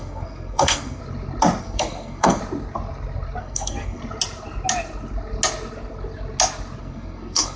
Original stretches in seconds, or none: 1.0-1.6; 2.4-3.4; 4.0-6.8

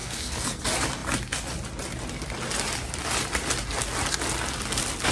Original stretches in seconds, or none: 0.6-5.1

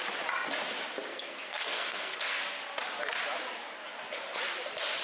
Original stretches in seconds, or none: 0.0-1.1; 2.4-5.0

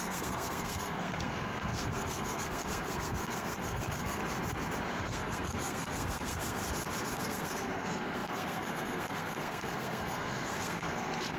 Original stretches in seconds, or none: 4.2-5.0; 6.6-7.2

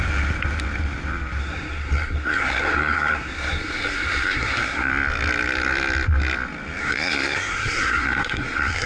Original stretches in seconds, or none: 0.0-1.4; 4.9-6.8

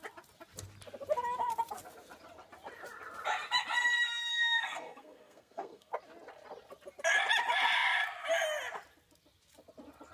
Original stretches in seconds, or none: 0.0-4.3; 5.9-10.1